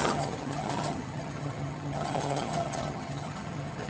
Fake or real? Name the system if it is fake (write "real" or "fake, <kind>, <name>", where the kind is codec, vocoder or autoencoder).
fake, vocoder, HiFi-GAN